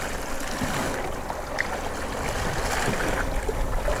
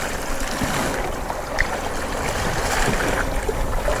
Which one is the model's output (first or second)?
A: second